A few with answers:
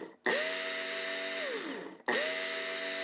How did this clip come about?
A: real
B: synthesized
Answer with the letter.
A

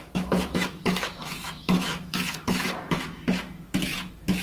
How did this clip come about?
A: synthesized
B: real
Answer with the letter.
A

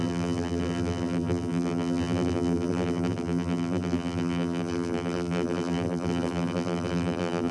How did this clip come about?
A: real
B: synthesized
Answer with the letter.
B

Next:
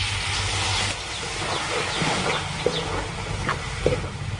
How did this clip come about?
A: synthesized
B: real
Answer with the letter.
B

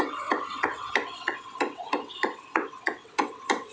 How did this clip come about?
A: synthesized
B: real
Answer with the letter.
A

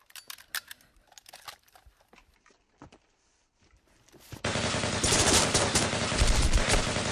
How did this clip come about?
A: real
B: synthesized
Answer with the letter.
A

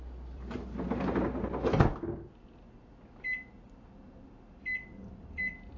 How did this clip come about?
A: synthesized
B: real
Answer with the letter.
B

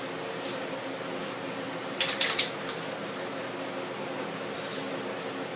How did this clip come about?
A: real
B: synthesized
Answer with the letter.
A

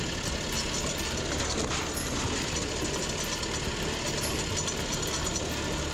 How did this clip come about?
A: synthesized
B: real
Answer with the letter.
B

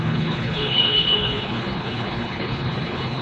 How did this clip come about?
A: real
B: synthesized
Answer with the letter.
B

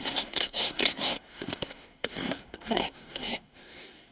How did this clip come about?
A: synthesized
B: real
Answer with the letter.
A